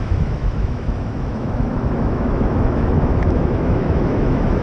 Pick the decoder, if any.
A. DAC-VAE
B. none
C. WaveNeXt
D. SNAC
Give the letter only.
A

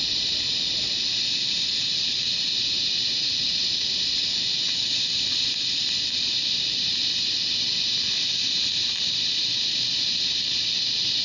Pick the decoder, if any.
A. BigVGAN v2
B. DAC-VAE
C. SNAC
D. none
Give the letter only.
A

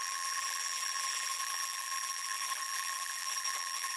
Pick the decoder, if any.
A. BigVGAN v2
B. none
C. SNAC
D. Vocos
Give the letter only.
A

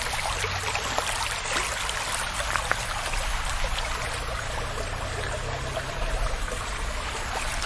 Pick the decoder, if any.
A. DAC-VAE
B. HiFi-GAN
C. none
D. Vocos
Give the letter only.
C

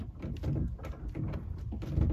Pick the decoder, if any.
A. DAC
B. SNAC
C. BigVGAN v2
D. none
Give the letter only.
D